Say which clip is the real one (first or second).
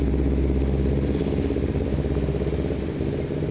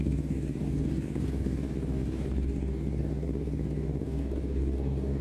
first